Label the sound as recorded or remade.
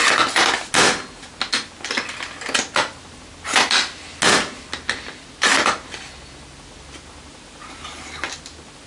recorded